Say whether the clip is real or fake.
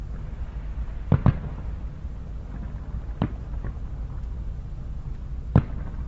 real